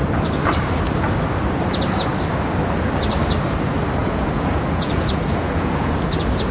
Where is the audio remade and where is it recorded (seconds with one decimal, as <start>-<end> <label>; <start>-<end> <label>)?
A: 0.0-4.0 recorded; 4.0-5.9 remade; 5.9-6.5 recorded